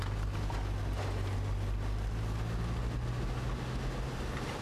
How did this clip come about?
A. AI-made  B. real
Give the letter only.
B